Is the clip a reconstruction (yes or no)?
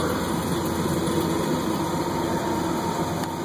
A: no